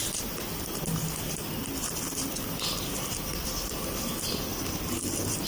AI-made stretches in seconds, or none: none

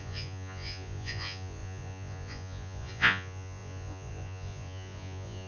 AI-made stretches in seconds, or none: 0.0-5.5 (vocoder, Vocos)

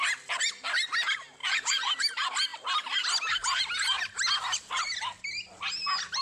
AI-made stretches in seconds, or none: 1.4-1.9 (vocoder, Vocos)

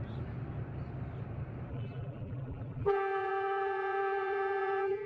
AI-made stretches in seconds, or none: 1.7-5.1 (vocoder, BigVGAN v2)

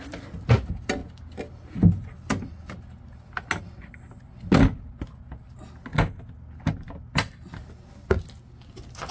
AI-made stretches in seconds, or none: none